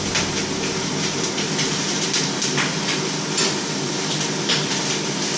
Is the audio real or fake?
real